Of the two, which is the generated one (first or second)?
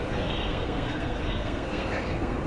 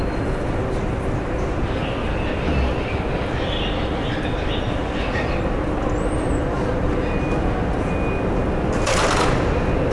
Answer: first